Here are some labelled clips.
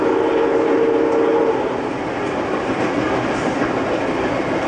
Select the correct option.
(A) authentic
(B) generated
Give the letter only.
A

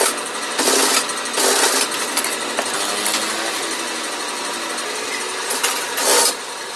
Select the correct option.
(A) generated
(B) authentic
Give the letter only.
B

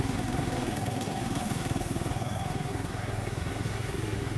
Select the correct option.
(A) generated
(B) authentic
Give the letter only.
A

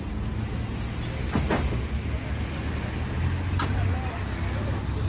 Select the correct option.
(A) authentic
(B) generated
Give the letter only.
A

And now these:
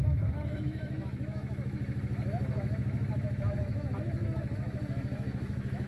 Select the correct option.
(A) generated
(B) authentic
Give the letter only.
A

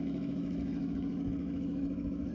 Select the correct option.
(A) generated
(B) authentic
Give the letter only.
A